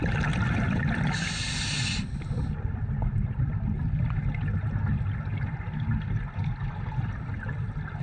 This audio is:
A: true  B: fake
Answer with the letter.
A